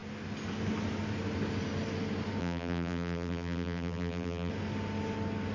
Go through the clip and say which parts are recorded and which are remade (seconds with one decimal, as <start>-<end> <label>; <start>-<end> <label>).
0.0-2.4 recorded; 2.4-4.5 remade; 4.5-5.5 recorded